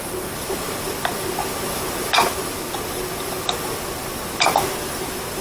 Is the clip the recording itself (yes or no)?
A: yes